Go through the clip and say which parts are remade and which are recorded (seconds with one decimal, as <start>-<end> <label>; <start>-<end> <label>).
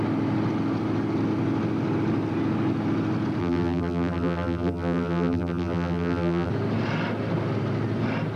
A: 0.0-3.4 recorded; 3.4-6.5 remade; 6.5-8.4 recorded